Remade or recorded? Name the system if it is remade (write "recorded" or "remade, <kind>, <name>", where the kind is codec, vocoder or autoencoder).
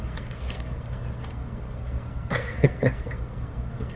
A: remade, codec, SNAC